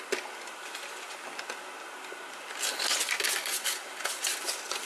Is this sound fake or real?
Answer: real